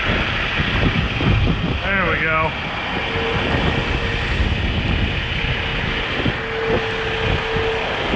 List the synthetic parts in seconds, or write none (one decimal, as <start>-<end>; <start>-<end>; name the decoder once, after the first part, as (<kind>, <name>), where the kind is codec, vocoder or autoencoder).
none